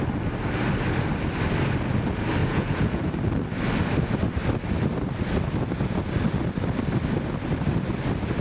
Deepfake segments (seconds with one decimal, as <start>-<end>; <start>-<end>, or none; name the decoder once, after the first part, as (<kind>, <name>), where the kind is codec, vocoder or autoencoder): 2.4-3.1 (vocoder, Vocos)